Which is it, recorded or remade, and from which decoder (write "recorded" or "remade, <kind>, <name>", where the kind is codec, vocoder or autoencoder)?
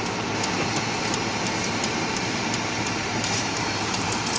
remade, vocoder, BigVGAN v2